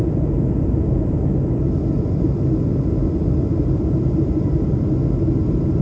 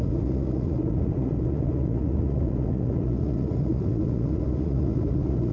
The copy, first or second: second